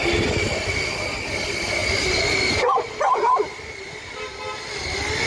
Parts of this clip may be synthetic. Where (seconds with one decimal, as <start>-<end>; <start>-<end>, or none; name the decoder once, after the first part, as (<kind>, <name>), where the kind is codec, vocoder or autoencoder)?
none